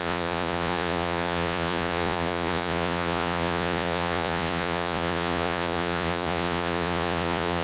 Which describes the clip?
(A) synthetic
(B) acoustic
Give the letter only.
A